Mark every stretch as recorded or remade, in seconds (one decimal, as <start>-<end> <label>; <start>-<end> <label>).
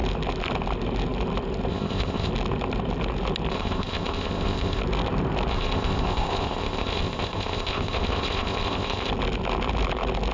0.0-1.7 recorded; 1.7-2.3 remade; 2.3-3.5 recorded; 3.5-4.8 remade; 4.8-5.5 recorded; 5.5-9.1 remade; 9.1-10.3 recorded